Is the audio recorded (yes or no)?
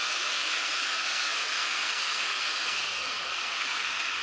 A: no